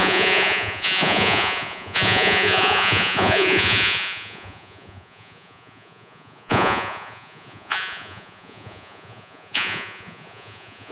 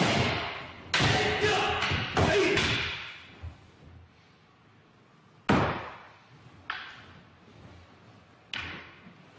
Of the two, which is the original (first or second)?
second